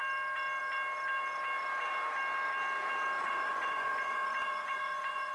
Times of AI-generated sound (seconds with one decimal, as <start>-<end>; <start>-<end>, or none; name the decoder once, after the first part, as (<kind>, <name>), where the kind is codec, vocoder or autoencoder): 3.2-5.3 (vocoder, Vocos)